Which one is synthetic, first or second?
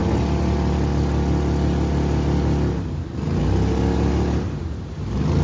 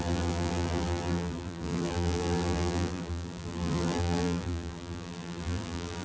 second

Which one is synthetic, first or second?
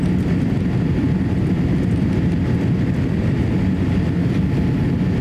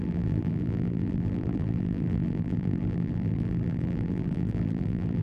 second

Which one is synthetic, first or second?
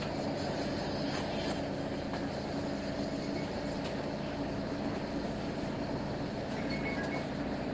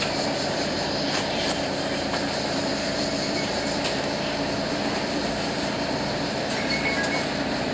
second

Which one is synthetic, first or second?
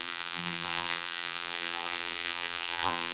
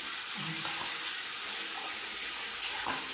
first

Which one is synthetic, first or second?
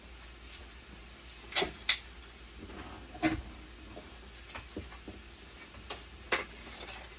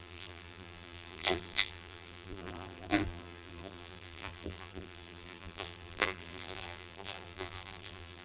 second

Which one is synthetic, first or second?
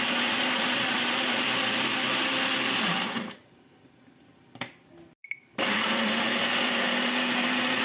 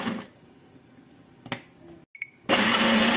first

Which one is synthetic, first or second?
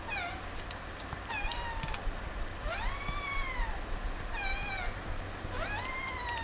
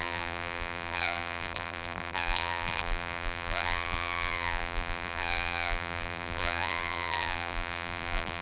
second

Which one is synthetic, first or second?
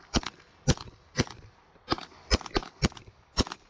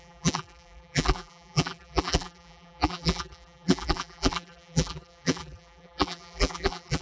second